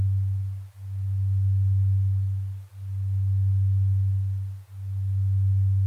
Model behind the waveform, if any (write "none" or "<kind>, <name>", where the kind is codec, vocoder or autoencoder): none